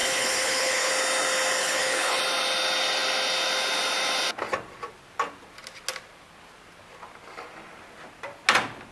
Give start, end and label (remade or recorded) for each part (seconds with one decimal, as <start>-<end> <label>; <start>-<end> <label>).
0.0-0.9 remade; 0.9-1.6 recorded; 1.6-2.2 remade; 2.2-8.9 recorded